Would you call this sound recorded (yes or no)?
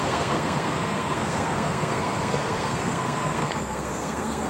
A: no